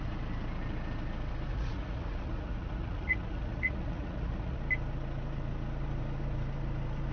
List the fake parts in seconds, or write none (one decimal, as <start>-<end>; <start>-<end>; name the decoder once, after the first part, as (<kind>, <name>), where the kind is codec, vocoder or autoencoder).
1.5-4.6 (vocoder, Vocos)